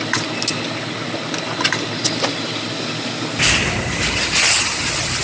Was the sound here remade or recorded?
recorded